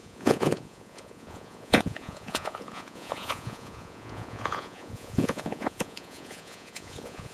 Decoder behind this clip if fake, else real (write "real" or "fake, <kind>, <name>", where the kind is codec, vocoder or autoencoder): fake, vocoder, Vocos